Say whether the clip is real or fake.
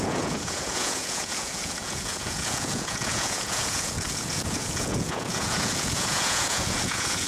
fake